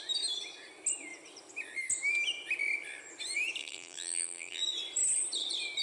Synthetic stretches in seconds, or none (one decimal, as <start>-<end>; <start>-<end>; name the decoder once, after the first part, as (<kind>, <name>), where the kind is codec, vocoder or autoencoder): 3.6-4.6 (vocoder, BigVGAN v2)